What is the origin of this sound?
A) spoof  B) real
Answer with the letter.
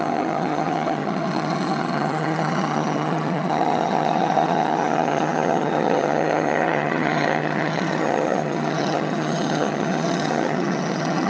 A